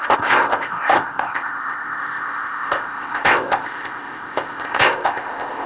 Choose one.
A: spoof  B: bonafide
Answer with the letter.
A